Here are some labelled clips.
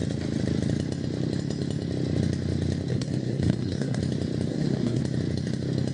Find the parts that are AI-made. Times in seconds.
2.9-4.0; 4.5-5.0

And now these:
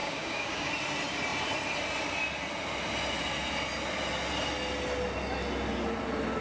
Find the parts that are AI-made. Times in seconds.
0.0-0.7